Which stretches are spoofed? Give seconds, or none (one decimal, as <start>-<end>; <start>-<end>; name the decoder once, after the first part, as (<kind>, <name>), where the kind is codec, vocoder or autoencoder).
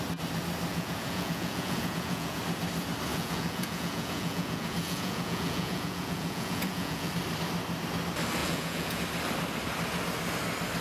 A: 0.7-2.4 (vocoder, Vocos); 3.1-7.1; 8.4-9.0